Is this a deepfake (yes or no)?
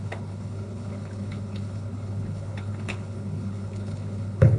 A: yes